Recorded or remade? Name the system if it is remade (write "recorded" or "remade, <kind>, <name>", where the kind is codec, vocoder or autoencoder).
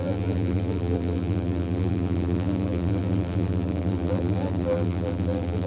remade, vocoder, BigVGAN v2